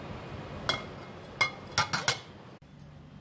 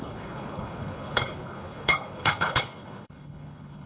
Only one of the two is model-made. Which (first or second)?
second